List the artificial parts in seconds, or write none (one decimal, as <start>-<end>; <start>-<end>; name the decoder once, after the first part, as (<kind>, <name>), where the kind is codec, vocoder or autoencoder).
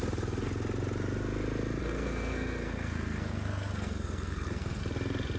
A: 1.8-4.8 (codec, SNAC)